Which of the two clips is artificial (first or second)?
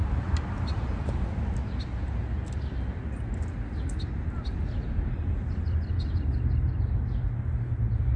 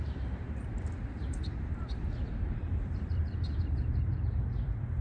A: second